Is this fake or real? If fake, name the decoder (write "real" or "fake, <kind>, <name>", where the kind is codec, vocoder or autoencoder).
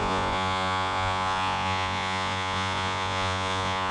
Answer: fake, vocoder, Vocos